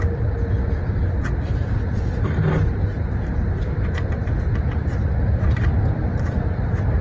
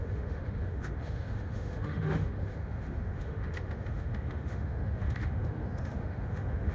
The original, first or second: first